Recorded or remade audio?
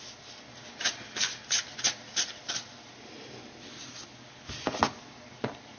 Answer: recorded